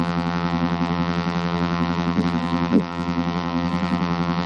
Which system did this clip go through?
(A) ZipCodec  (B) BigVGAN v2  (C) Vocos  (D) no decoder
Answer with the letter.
B